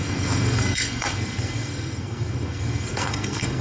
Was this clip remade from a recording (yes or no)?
yes